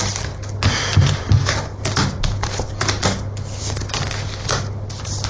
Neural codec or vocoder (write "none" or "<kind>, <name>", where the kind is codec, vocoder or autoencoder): none